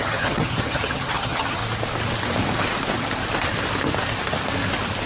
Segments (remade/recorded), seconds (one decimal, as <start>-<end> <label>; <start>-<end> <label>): 0.0-1.6 remade; 1.6-5.1 recorded